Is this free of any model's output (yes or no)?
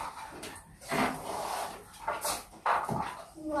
yes